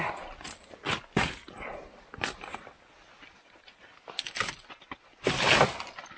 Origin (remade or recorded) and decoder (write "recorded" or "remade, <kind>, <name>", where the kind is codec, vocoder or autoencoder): recorded